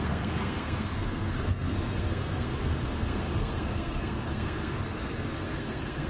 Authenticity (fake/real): fake